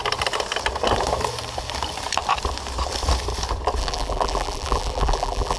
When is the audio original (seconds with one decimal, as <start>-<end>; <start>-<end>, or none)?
0.0-3.8